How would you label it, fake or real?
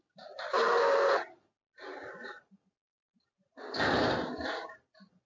real